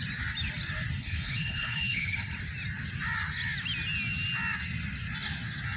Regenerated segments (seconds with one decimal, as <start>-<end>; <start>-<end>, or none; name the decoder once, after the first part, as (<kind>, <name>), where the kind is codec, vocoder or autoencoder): 1.0-2.4 (codec, HILCodec)